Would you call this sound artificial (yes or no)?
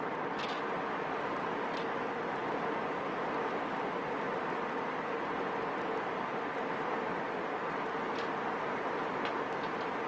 no